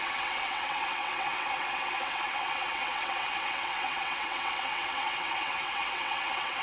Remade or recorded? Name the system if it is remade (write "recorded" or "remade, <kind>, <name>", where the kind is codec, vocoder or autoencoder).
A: remade, vocoder, WaveNeXt